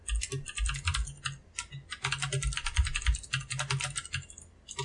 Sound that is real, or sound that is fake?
real